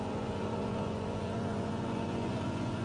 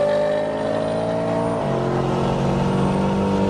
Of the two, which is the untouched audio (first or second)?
second